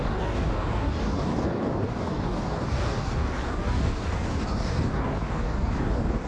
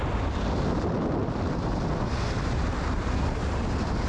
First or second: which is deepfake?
first